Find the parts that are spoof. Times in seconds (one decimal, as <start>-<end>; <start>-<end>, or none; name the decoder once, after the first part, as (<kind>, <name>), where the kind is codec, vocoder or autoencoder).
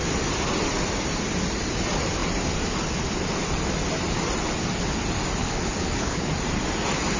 5.4-6.3 (codec, HILCodec)